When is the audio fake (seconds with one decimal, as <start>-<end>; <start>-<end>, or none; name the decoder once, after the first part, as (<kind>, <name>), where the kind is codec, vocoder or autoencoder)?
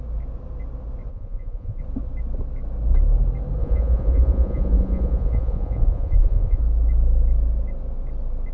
1.1-1.8 (vocoder, Vocos); 3.6-6.6